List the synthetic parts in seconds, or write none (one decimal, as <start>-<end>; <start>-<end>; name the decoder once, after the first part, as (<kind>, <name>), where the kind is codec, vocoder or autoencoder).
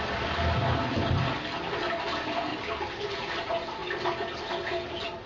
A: 2.5-3.3 (vocoder, BigVGAN v2)